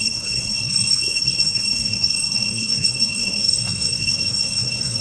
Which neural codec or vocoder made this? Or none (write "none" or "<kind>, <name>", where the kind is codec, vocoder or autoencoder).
codec, SNAC